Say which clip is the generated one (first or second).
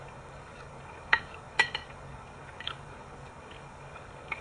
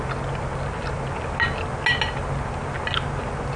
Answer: first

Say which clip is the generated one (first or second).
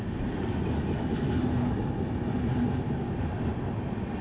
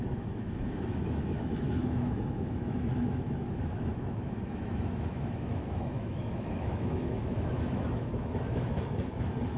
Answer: second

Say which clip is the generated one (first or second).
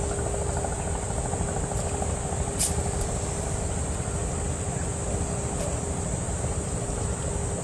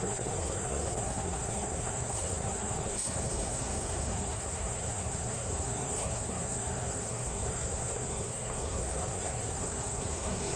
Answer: second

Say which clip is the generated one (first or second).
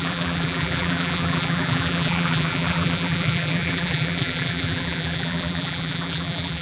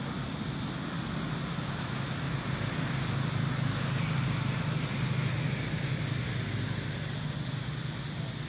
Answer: first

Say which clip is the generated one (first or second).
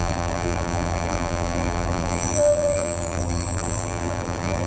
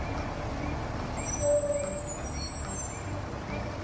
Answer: first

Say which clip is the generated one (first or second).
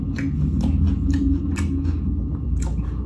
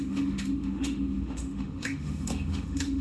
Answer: second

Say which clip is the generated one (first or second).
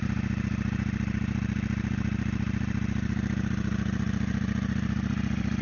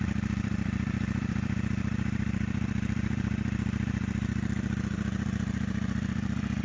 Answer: second